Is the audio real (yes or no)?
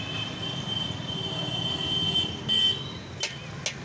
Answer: yes